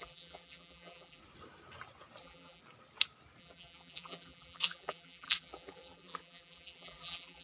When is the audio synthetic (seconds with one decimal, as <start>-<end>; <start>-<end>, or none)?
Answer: 0.0-1.2; 2.2-2.6; 3.4-7.4

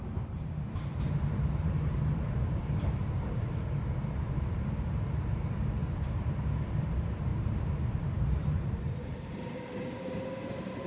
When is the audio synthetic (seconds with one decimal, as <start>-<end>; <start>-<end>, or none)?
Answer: 0.0-10.9

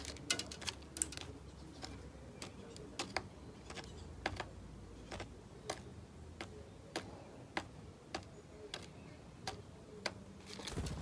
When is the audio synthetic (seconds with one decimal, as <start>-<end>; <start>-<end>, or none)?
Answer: none

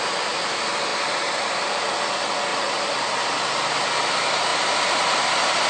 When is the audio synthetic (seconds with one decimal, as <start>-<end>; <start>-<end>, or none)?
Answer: 0.9-1.8; 2.5-3.9; 4.5-5.3

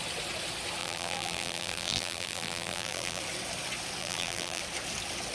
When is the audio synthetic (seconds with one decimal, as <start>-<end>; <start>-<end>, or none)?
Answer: 0.8-3.2; 4.0-4.6

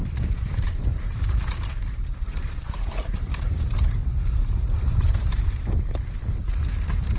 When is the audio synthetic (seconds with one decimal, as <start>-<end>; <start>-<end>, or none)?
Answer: 0.0-3.6; 4.0-6.0